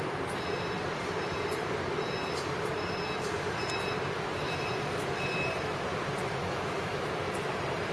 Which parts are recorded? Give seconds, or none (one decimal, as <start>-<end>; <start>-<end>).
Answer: 0.0-6.4; 7.1-7.9